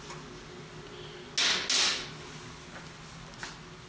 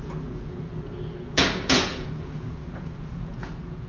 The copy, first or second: second